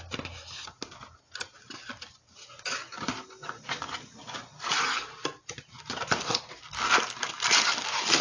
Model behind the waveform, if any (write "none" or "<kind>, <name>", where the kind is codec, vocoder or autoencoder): none